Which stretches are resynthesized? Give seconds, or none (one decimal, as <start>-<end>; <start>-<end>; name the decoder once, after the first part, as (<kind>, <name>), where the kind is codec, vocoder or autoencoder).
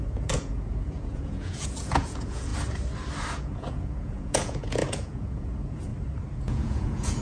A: 0.0-2.5 (vocoder, Vocos); 3.3-5.9; 6.4-7.2